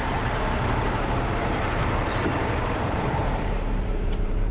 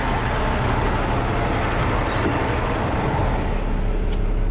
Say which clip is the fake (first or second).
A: first